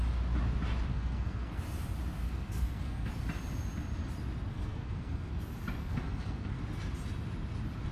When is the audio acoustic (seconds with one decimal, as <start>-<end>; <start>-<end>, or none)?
0.0-0.9; 1.6-2.2; 3.1-4.5; 5.3-5.8; 6.6-7.9